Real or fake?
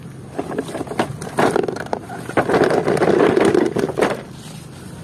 real